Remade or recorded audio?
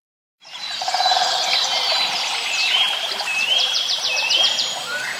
remade